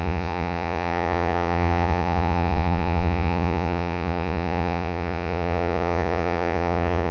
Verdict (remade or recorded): remade